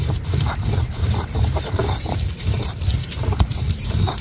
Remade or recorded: remade